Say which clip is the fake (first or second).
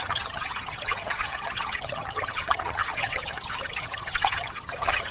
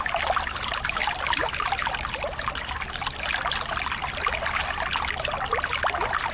first